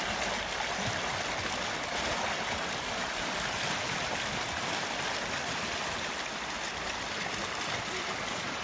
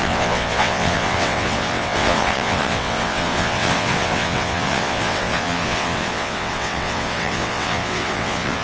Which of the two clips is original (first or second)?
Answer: first